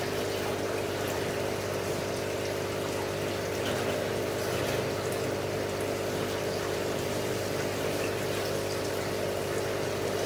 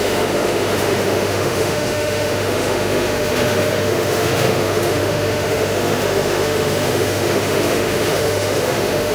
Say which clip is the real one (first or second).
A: first